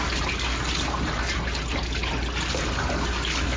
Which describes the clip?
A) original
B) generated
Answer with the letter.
A